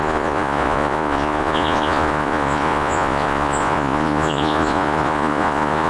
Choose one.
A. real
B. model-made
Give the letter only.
B